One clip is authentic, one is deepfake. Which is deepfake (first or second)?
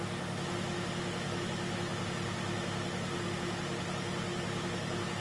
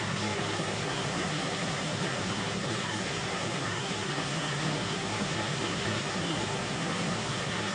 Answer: second